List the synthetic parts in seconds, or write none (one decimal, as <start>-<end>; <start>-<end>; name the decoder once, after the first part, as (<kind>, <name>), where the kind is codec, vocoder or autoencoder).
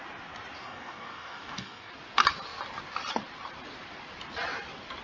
0.6-1.9 (codec, DAC)